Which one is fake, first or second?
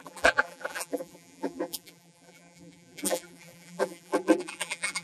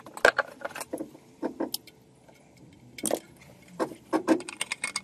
first